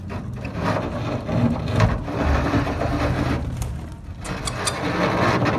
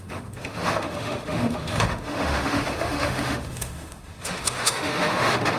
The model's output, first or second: second